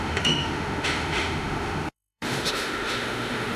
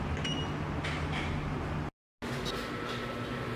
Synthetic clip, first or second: first